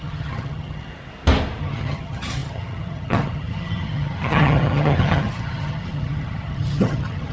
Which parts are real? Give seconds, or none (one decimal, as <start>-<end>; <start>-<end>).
0.9-1.6